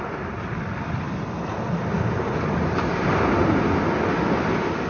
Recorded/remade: recorded